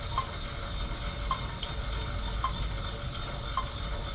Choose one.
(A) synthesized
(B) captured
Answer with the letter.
B